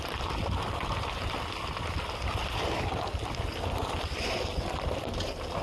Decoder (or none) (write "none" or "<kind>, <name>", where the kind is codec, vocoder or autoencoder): none